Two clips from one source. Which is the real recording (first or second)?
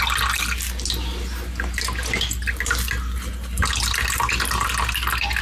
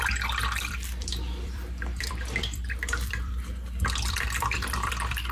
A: first